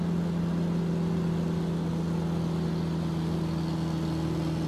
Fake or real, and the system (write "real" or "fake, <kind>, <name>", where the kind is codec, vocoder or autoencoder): real